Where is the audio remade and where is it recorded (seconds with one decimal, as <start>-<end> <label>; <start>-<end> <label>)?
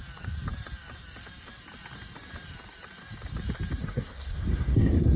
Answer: 0.0-3.8 recorded; 3.8-5.2 remade